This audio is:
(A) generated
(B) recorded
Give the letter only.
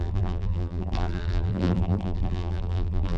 A